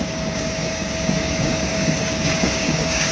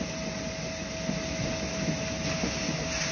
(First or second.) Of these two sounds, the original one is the second